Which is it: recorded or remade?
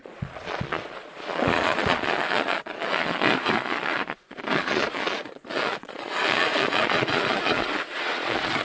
remade